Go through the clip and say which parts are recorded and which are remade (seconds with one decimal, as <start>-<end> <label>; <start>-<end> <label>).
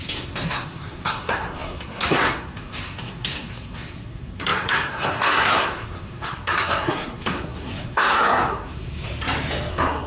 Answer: 0.0-9.1 remade; 9.1-9.7 recorded; 9.7-10.1 remade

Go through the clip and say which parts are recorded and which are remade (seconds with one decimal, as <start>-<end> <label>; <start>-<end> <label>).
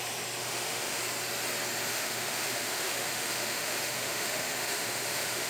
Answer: 0.0-0.4 recorded; 0.4-1.0 remade; 1.0-1.9 recorded; 1.9-5.5 remade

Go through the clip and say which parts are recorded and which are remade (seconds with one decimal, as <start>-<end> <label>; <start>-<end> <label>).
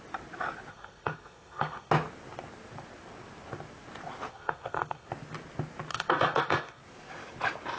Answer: 0.0-0.7 recorded; 0.7-1.9 remade; 1.9-4.3 recorded; 4.3-5.1 remade; 5.1-5.9 recorded; 5.9-6.8 remade; 6.8-7.8 recorded